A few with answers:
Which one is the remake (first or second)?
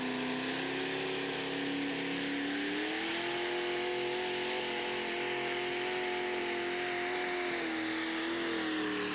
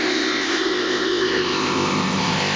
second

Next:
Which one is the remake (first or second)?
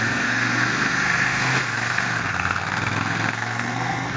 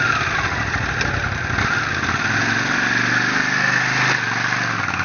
first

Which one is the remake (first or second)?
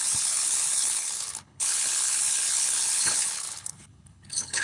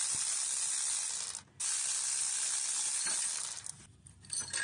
first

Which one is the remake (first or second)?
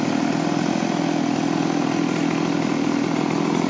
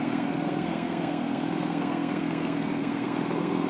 second